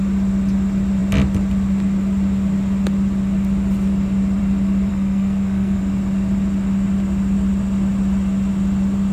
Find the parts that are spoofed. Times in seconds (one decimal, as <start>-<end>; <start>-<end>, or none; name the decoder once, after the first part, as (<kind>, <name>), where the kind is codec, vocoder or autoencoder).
4.9-5.8 (codec, SNAC)